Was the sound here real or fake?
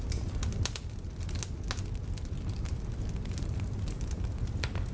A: real